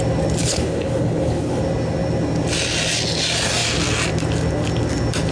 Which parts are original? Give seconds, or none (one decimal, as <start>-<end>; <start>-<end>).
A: 0.0-0.4; 1.6-5.3